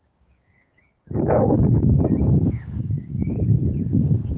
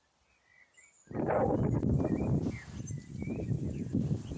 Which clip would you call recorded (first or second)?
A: second